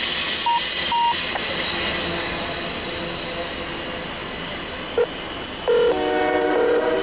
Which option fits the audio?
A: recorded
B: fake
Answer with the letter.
A